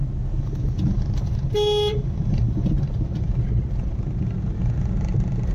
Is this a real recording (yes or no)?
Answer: yes